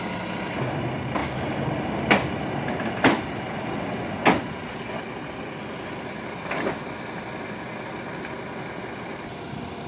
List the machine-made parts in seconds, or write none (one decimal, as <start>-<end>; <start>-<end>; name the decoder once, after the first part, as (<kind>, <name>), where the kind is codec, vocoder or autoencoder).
none